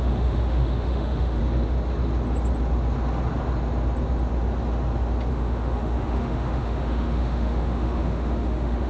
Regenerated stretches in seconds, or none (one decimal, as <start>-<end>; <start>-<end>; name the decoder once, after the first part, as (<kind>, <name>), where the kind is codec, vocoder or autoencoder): 0.0-1.4 (autoencoder, DAC-VAE); 5.3-8.9